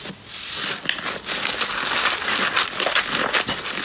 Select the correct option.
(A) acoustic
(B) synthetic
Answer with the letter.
A